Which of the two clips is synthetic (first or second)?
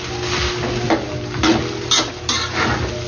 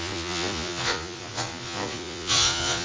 second